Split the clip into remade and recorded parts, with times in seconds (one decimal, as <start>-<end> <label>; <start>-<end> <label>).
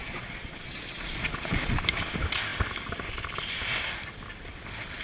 0.0-1.7 remade; 1.7-5.0 recorded